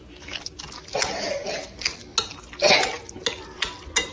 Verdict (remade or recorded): recorded